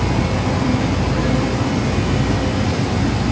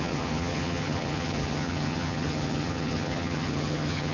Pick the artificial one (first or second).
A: second